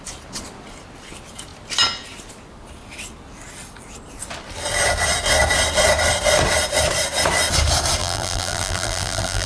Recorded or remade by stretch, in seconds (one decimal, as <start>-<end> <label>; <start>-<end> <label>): 0.0-8.0 recorded; 8.0-9.5 remade